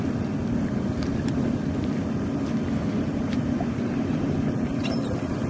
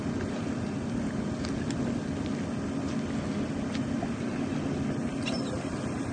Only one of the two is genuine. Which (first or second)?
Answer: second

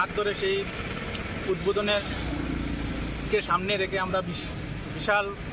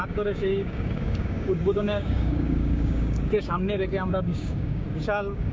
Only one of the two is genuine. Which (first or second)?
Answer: first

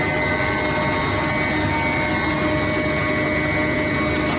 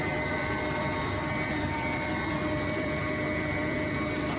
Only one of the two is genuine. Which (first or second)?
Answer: first